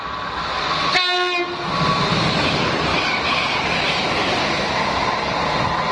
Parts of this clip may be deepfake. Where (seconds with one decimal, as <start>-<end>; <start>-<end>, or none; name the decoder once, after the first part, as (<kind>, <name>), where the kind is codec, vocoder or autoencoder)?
2.9-4.8 (vocoder, BigVGAN v2)